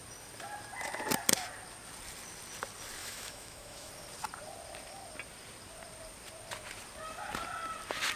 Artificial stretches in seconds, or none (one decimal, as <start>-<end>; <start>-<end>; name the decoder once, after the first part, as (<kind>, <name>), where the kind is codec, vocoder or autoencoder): 3.0-3.9 (autoencoder, DAC-VAE)